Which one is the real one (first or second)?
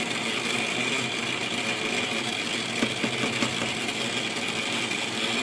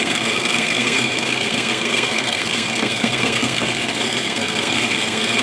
first